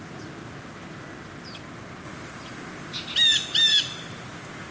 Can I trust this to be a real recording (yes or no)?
yes